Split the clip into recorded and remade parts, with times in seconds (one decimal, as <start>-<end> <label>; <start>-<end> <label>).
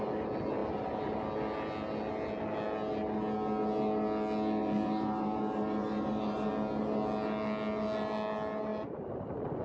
0.0-4.6 recorded; 4.6-6.5 remade; 6.5-9.6 recorded